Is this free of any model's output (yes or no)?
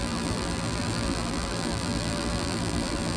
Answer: no